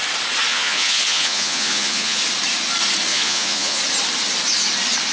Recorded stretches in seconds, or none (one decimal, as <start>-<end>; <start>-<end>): 0.0-0.5; 2.2-3.1; 3.8-5.1